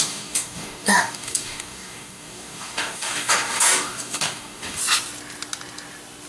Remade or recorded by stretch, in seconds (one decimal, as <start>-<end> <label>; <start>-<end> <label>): 0.0-4.8 remade; 4.8-6.3 recorded